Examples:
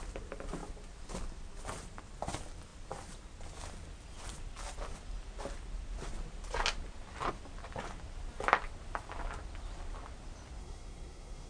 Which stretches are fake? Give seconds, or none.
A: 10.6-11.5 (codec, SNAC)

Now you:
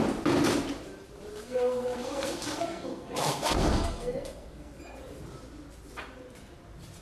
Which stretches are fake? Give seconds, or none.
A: 1.3-4.8 (codec, SNAC)

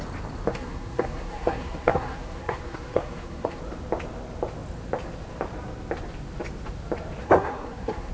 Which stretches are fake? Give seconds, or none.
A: 0.5-3.6 (codec, SNAC); 7.2-8.1

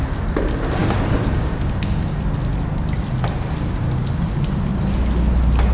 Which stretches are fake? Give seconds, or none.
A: none

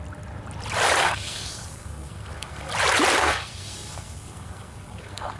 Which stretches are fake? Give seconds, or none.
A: 1.0-2.7 (codec, SNAC); 3.2-5.4